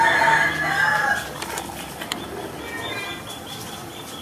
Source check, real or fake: real